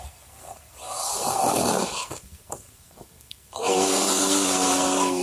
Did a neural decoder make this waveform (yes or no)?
yes